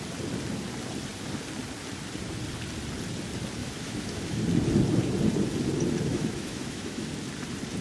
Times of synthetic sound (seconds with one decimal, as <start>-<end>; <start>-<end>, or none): 3.6-4.4; 6.1-7.1